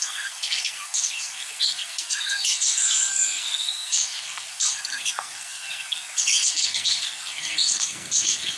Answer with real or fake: fake